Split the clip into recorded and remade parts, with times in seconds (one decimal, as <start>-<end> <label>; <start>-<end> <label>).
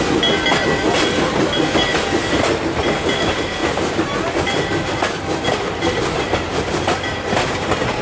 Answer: 0.0-8.0 recorded